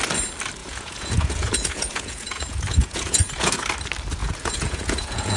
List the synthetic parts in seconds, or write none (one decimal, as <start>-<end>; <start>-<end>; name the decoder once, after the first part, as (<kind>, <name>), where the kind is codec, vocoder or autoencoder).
0.6-3.5 (vocoder, Vocos); 4.2-5.4